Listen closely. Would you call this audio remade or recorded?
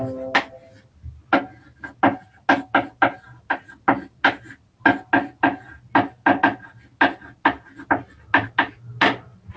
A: recorded